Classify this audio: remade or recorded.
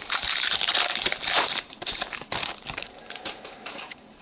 remade